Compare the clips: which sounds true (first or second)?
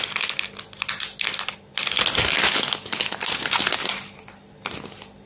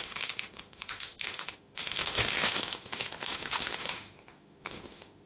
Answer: first